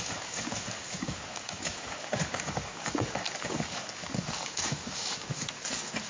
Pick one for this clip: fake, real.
fake